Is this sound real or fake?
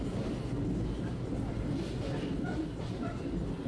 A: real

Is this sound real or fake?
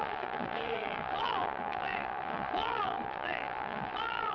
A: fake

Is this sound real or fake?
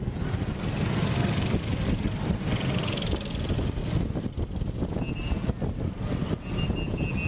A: real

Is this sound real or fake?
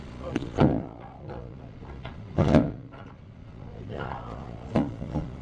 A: fake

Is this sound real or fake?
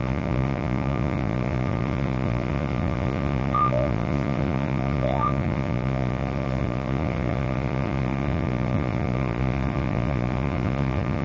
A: fake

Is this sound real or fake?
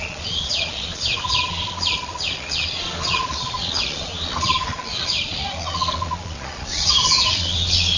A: fake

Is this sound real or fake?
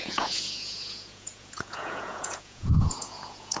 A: fake